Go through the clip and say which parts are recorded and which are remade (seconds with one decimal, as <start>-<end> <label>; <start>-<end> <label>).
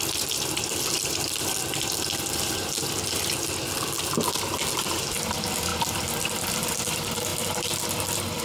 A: 0.0-8.4 recorded